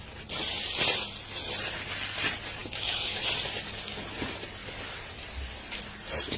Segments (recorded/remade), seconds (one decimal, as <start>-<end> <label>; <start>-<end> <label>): 0.0-2.6 recorded; 2.6-3.2 remade; 3.2-6.4 recorded